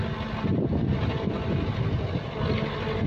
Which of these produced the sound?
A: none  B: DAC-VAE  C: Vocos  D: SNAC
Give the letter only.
A